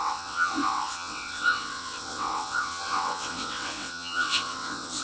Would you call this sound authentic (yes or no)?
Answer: no